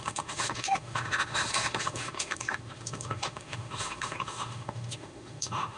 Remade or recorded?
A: remade